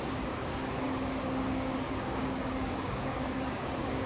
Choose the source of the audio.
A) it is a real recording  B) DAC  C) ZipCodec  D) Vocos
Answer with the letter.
B